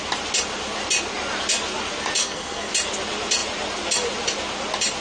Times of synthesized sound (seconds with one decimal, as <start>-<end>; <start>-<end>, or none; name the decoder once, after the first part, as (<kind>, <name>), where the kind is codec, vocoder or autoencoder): 2.2-2.7 (codec, SNAC)